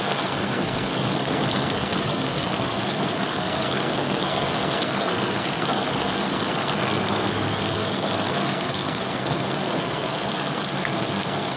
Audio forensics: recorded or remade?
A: remade